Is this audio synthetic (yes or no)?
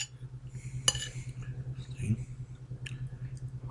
no